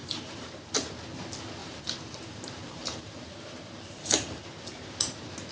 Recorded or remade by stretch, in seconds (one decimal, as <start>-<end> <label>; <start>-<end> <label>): 0.0-0.7 remade; 0.7-1.6 recorded; 1.6-4.9 remade; 4.9-5.5 recorded

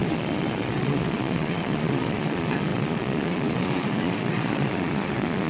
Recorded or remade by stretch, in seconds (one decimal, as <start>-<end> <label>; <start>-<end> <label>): 0.0-5.5 remade

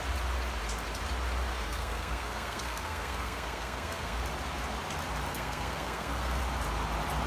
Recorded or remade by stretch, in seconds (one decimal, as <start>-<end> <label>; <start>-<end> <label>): 0.0-1.5 recorded; 1.5-4.2 remade; 4.2-5.3 recorded; 5.3-6.4 remade; 6.4-7.3 recorded